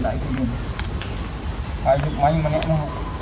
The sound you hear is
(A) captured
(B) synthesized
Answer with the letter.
A